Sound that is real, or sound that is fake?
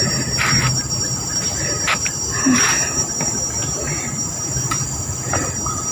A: real